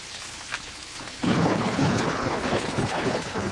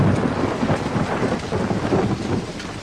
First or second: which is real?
second